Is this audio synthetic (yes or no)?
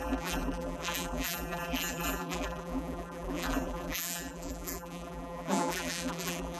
yes